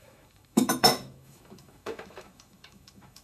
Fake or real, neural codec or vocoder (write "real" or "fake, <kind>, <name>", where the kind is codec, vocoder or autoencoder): fake, autoencoder, DAC-VAE